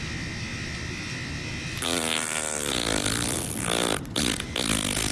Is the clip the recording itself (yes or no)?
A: yes